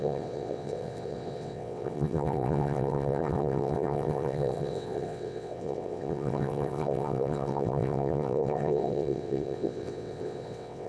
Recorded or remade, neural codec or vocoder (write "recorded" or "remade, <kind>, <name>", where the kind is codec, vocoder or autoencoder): remade, vocoder, WaveNeXt